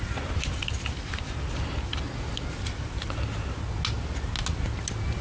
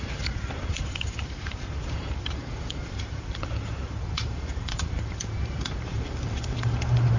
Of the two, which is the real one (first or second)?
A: first